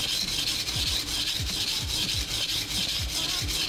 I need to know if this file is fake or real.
real